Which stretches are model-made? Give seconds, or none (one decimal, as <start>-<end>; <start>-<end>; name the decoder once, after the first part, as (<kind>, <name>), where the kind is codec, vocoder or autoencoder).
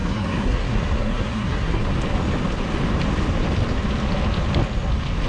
0.0-1.8 (codec, SNAC)